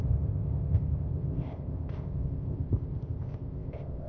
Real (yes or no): no